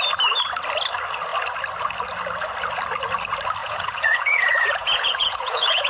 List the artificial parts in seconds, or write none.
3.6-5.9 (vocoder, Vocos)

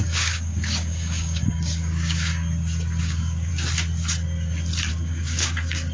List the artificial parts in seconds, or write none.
0.0-2.3 (codec, DAC); 3.0-3.5; 4.9-5.9